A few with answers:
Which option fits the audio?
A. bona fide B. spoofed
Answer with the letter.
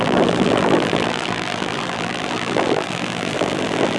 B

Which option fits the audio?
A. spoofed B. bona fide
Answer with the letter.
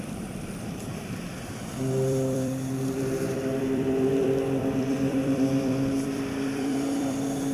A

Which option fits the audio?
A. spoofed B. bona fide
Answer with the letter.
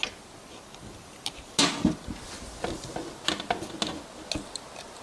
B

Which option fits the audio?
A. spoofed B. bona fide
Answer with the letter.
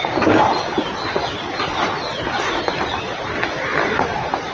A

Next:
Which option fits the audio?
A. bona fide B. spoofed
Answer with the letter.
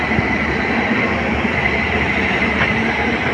B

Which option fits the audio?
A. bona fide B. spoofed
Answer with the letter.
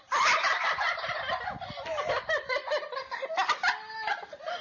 A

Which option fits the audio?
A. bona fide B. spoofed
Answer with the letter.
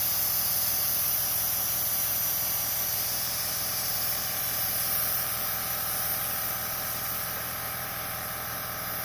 B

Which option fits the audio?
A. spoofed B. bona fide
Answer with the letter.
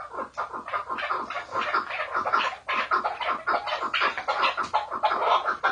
B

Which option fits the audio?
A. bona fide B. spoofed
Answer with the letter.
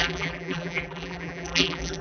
B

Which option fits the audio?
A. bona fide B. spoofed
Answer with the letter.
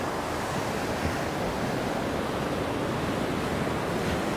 A